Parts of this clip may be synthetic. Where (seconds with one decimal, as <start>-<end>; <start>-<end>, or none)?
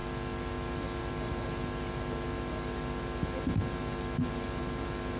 none